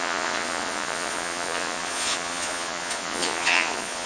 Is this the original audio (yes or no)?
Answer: no